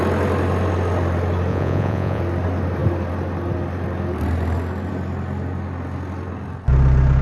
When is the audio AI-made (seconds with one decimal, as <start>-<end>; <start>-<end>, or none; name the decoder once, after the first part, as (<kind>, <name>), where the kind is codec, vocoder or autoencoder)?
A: 1.5-2.2 (vocoder, Vocos)